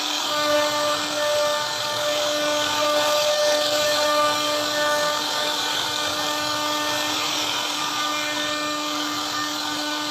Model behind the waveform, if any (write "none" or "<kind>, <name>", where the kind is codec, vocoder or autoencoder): codec, DAC